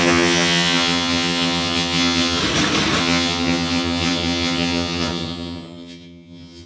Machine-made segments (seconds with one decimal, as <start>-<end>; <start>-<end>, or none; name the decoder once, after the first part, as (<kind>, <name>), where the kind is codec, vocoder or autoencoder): 0.0-2.4 (vocoder, HiFi-GAN); 3.0-6.7